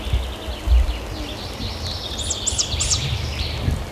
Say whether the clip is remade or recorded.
recorded